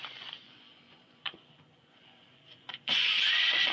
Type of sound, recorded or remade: remade